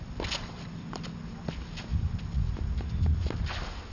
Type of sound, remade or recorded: recorded